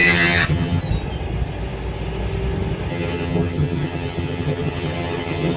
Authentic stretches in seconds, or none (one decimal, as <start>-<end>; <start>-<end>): 0.8-2.9